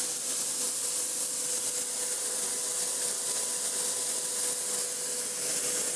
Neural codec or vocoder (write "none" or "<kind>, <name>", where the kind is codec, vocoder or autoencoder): none